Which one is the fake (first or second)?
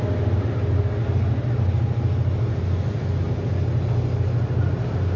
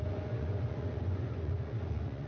second